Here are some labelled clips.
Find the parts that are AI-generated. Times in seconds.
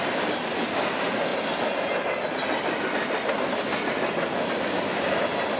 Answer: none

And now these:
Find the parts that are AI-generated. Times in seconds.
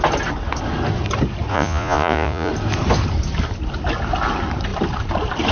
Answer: 1.5-2.5 (vocoder, Vocos)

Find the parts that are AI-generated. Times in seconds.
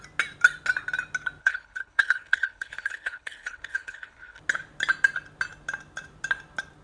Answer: 1.4-4.4 (codec, HILCodec)